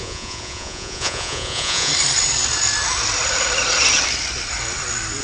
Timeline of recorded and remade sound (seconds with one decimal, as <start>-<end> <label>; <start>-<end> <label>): 0.0-1.9 remade; 1.9-5.2 recorded